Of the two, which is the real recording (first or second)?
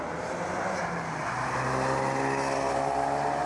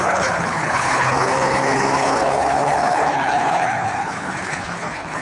first